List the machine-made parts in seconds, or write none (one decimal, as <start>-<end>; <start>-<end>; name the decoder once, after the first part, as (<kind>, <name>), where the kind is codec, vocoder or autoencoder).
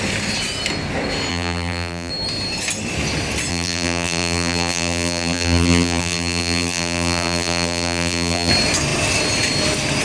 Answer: 1.3-2.1 (vocoder, BigVGAN v2); 3.5-8.5